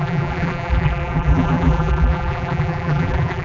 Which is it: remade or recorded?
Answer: remade